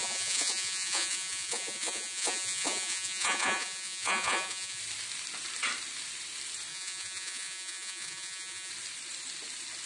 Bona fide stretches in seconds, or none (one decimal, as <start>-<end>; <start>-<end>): 4.8-6.7; 8.7-9.9